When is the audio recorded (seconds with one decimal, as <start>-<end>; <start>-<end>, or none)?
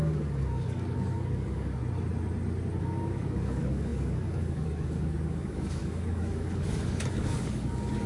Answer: 1.8-2.8